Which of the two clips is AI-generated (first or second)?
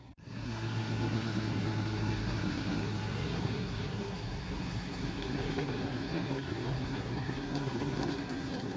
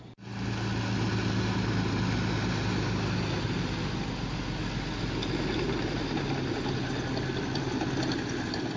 first